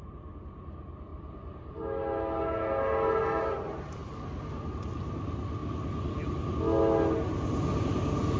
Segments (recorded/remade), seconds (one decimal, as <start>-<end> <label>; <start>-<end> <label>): 0.0-1.1 recorded; 1.1-1.8 remade; 1.8-8.4 recorded